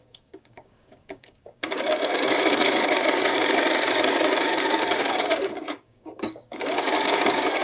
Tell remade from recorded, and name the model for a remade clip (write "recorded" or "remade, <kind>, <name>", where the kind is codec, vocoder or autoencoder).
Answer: remade, codec, DAC